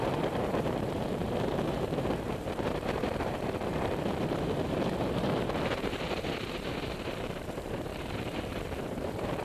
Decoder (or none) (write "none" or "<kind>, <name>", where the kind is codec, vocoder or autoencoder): vocoder, BigVGAN v2